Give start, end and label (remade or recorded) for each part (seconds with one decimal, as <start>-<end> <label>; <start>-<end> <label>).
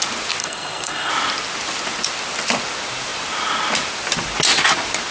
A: 0.0-0.4 recorded; 0.4-1.1 remade; 1.1-5.1 recorded